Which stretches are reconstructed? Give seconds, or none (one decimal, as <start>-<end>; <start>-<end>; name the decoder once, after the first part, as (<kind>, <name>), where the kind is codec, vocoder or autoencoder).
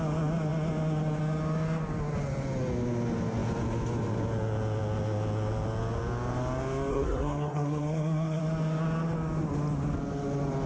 6.9-8.4 (codec, SNAC)